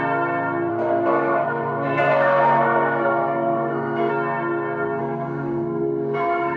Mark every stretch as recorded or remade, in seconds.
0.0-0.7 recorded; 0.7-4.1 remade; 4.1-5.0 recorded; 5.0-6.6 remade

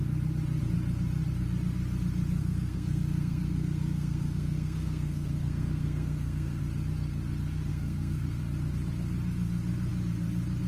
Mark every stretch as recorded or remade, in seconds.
0.0-2.4 recorded; 2.4-6.6 remade; 6.6-7.7 recorded; 7.7-8.4 remade; 8.4-10.7 recorded

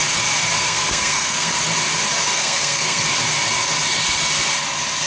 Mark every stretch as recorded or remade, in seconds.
0.0-0.6 recorded; 0.6-1.6 remade; 1.6-2.3 recorded; 2.3-3.0 remade; 3.0-5.1 recorded

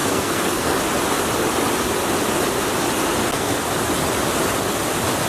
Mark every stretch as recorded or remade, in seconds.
0.0-0.8 remade; 0.8-3.2 recorded; 3.2-3.7 remade; 3.7-5.3 recorded

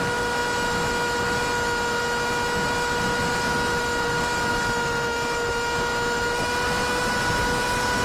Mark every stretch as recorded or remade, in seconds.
0.0-8.0 recorded